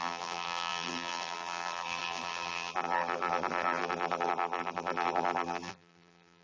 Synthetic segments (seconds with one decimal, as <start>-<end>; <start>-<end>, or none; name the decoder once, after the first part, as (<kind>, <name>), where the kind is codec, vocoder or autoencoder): 0.0-6.4 (vocoder, BigVGAN v2)